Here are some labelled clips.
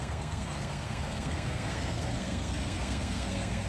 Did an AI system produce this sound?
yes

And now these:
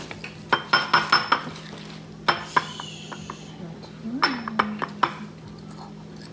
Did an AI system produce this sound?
no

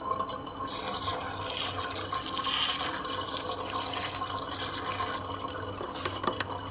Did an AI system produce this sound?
no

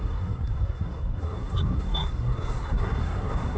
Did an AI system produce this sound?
yes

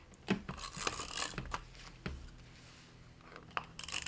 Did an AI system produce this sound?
no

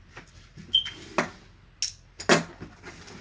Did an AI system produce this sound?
no